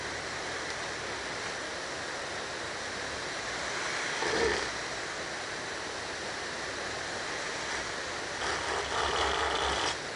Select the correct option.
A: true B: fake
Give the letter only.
A